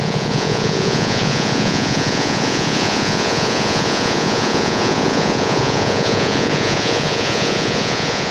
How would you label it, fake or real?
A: fake